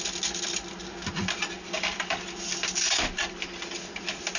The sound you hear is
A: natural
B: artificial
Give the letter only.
A